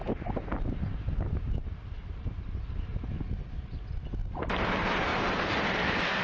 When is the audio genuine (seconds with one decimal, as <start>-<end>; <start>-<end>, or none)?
3.3-5.1